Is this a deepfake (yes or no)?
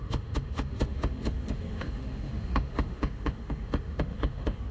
yes